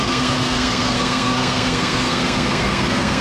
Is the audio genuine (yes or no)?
no